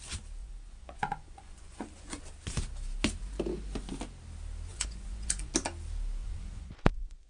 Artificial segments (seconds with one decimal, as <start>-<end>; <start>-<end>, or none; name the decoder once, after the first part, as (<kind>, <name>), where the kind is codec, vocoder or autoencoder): 0.4-2.2 (vocoder, Vocos); 4.7-5.5; 6.2-7.3